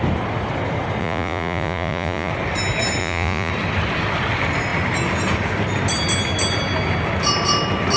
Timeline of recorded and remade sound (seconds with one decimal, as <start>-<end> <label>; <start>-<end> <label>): 0.0-1.0 recorded; 1.0-2.3 remade; 2.3-3.0 recorded; 3.0-3.5 remade; 3.5-8.0 recorded